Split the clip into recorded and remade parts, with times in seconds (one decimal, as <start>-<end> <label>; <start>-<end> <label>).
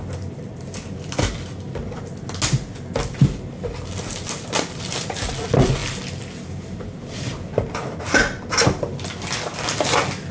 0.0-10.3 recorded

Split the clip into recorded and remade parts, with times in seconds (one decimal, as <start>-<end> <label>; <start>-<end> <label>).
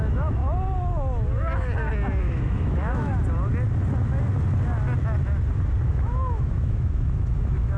0.0-0.4 remade; 0.4-2.2 recorded; 2.2-3.1 remade; 3.1-5.9 recorded; 5.9-7.8 remade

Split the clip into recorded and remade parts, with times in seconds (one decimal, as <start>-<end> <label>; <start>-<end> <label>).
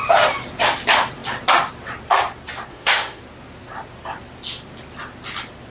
0.0-2.7 recorded; 2.7-3.2 remade; 3.2-5.7 recorded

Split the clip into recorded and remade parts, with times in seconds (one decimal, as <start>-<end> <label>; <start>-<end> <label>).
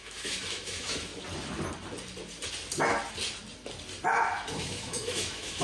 0.0-1.1 remade; 1.1-4.5 recorded; 4.5-5.6 remade